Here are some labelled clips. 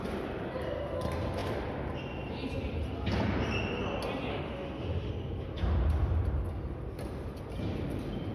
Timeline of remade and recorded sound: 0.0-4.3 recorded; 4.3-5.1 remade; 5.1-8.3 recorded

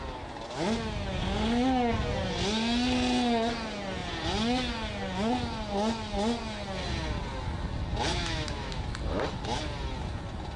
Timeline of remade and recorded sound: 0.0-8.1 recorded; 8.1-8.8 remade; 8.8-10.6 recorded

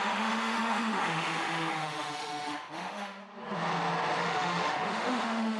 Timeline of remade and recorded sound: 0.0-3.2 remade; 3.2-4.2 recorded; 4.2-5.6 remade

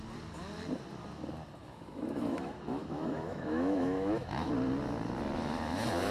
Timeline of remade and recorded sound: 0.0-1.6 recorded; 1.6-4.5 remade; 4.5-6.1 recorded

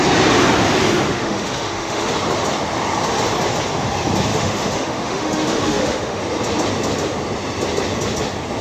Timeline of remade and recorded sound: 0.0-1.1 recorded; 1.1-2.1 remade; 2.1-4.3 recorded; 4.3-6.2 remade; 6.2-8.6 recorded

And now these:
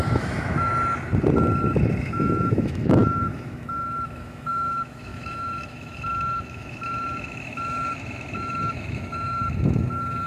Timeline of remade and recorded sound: 0.0-0.7 remade; 0.7-2.0 recorded; 2.0-10.3 remade

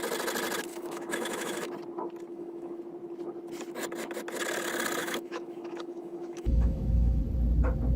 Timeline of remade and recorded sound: 0.0-0.7 recorded; 0.7-1.7 remade; 1.7-2.3 recorded; 2.3-2.8 remade; 2.8-5.0 recorded; 5.0-7.2 remade; 7.2-8.0 recorded

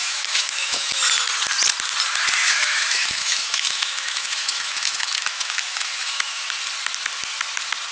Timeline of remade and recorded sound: 0.0-1.0 remade; 1.0-2.4 recorded; 2.4-6.5 remade; 6.5-7.9 recorded